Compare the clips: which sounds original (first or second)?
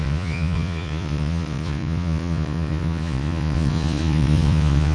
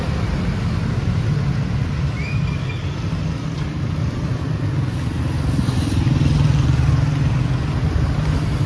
second